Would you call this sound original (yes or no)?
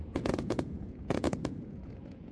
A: no